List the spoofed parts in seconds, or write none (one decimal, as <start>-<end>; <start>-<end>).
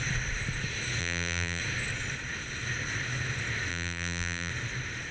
1.0-1.6; 3.7-4.5